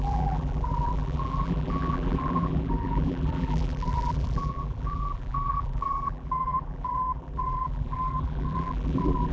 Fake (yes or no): yes